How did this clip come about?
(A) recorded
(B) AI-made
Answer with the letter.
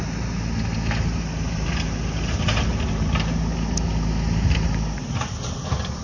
A